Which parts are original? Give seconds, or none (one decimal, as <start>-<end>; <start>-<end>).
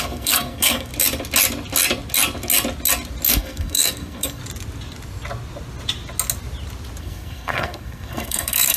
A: 0.9-3.3; 4.4-7.0